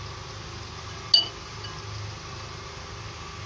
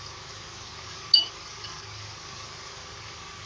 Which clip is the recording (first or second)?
first